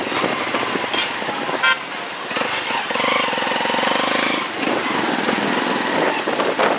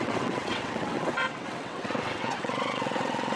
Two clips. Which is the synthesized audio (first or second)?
second